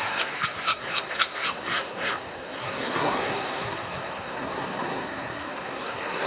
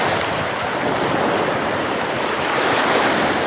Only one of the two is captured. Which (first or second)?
second